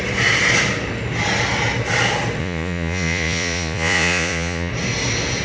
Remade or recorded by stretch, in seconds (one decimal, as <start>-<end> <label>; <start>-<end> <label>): 0.0-2.4 recorded; 2.4-4.7 remade; 4.7-5.4 recorded